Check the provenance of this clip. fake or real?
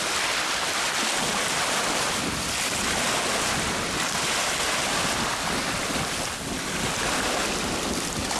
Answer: real